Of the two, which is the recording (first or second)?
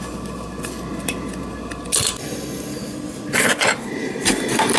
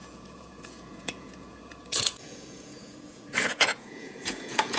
first